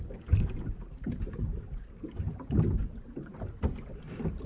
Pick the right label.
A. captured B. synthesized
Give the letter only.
A